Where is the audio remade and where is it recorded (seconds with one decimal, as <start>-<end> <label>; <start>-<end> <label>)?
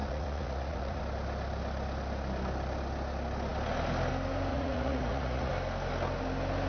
0.0-1.0 remade; 1.0-4.5 recorded; 4.5-5.5 remade; 5.5-6.7 recorded